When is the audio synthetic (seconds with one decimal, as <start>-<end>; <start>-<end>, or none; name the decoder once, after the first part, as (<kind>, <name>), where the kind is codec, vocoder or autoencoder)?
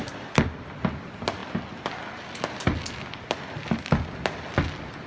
none